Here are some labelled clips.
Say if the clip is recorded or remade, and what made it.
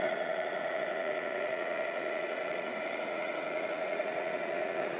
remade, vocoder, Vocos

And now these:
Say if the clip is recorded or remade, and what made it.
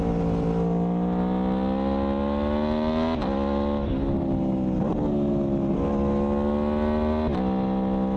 recorded